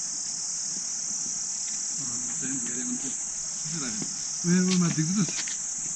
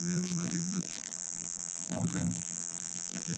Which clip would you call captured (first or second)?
first